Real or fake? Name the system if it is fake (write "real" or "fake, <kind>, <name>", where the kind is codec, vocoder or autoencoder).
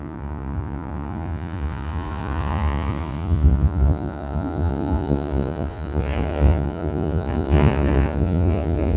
fake, vocoder, Vocos